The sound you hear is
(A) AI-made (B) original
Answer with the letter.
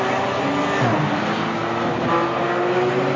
B